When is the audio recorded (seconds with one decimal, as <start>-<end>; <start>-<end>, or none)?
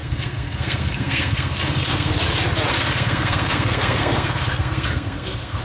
2.1-2.7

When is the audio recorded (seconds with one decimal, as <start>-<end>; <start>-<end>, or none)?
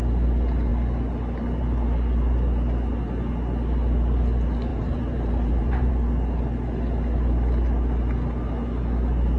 0.0-4.7; 5.9-9.4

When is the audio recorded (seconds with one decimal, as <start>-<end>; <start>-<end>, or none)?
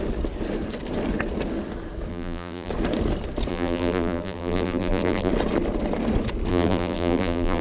0.0-2.1; 2.7-3.5; 5.3-6.5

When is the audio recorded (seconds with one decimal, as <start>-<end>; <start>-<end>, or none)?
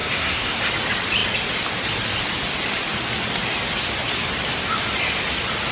0.6-5.7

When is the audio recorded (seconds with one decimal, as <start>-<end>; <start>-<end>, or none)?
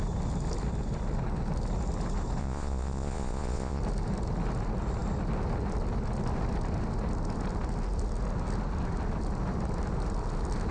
0.0-2.4; 3.8-10.7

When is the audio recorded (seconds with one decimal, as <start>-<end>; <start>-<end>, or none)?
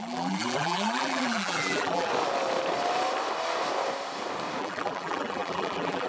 2.1-4.6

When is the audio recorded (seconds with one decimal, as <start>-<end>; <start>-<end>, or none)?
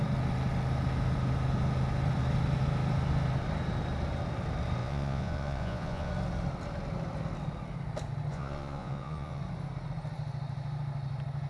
0.0-4.8; 6.1-8.3; 9.4-11.5